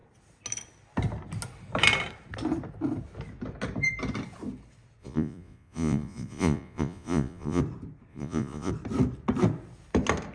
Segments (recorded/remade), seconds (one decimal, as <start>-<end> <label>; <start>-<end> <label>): 0.0-5.0 recorded; 5.0-7.6 remade; 7.6-8.1 recorded; 8.1-8.7 remade; 8.7-10.3 recorded